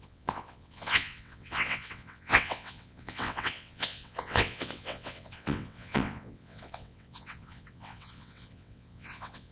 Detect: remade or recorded remade